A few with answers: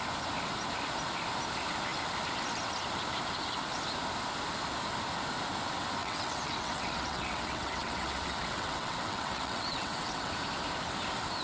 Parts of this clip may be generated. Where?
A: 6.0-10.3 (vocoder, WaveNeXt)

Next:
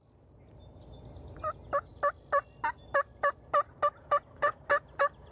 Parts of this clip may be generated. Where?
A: none

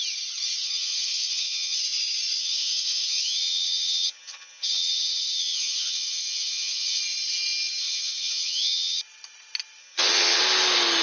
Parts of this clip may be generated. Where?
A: 0.6-1.8 (vocoder, HiFi-GAN); 2.4-7.0; 7.8-9.0; 9.8-10.4

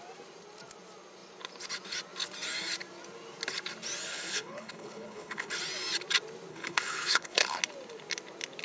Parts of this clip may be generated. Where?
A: 4.1-5.5 (codec, HILCodec); 6.5-7.6

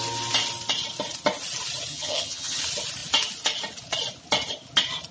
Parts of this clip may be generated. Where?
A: 1.9-2.6 (vocoder, HiFi-GAN)

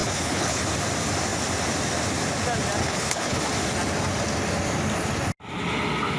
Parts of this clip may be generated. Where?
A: 0.0-0.6 (codec, HILCodec); 2.8-3.4

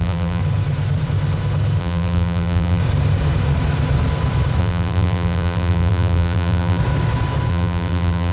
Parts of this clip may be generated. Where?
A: 0.0-0.4 (vocoder, BigVGAN v2); 1.8-2.8; 4.6-6.8; 7.5-8.3

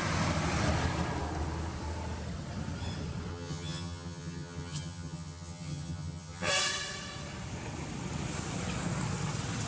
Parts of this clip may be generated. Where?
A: 3.3-6.5 (vocoder, HiFi-GAN)